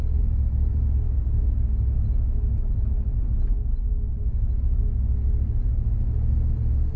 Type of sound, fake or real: real